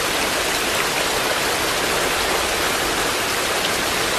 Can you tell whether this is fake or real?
real